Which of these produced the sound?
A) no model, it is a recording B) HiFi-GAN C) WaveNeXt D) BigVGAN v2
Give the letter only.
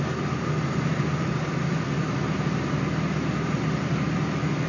A